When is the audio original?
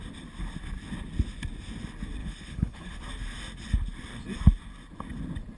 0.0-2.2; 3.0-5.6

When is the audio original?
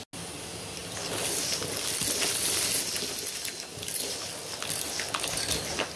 0.0-6.0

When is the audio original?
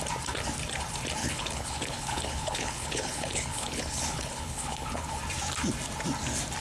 0.0-1.2; 5.2-6.6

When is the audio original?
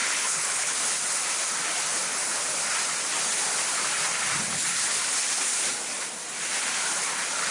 0.8-7.5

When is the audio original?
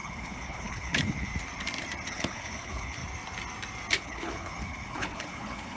1.3-2.1; 3.0-3.9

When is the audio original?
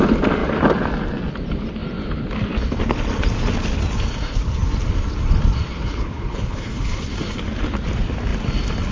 0.0-5.7; 7.0-8.9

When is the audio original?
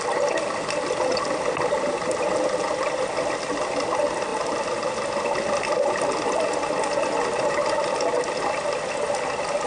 0.0-9.7